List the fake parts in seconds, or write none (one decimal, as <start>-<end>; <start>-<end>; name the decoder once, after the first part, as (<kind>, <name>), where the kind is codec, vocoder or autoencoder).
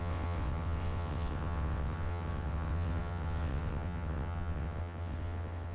0.0-5.7 (vocoder, WaveNeXt)